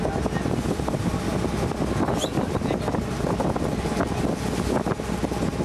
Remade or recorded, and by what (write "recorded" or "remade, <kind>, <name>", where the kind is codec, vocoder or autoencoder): recorded